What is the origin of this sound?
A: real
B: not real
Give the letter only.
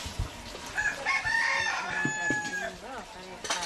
A